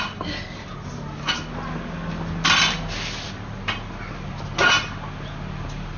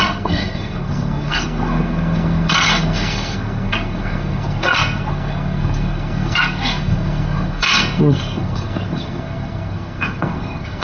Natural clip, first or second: first